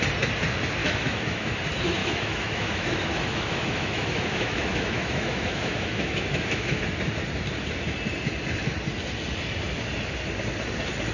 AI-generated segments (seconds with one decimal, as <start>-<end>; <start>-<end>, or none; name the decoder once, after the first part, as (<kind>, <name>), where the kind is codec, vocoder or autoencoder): 0.8-1.5 (autoencoder, DAC-VAE); 2.0-6.8